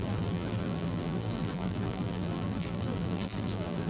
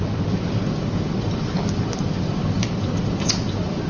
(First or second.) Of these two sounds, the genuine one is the second